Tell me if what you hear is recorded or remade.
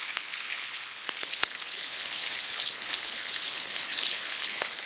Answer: remade